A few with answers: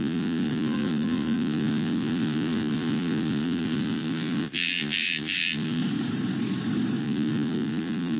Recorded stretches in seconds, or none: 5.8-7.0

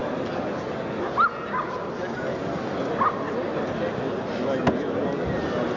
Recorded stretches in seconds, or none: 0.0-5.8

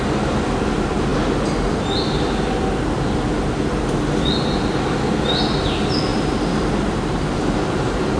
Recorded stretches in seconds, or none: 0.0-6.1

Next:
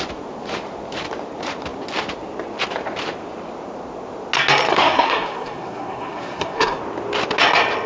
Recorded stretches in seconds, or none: 0.0-4.7; 6.8-7.9